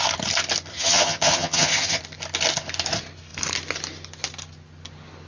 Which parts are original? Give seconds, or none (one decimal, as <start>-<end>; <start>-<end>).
0.0-0.7; 2.0-5.3